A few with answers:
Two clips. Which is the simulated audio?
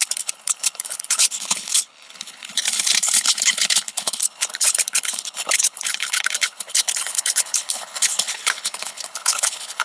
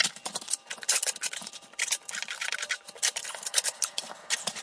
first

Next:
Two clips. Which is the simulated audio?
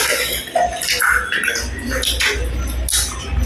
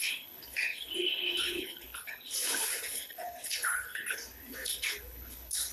second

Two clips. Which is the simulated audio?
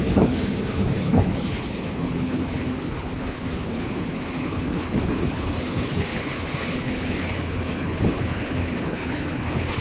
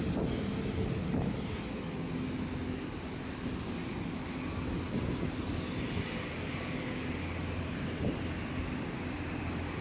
first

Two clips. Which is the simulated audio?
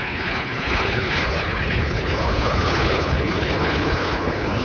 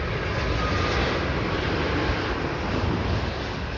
first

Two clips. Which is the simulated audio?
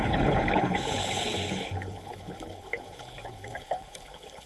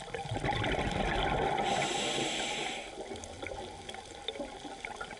first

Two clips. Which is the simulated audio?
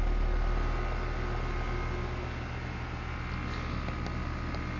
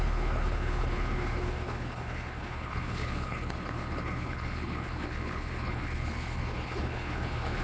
second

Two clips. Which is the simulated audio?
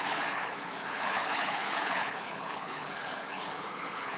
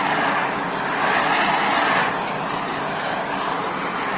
first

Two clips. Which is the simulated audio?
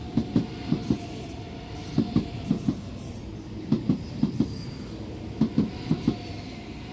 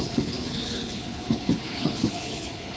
second